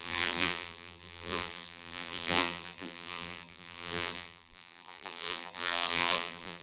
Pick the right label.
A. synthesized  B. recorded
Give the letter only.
A